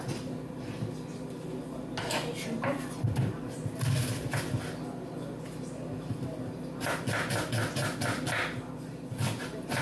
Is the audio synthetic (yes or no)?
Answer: no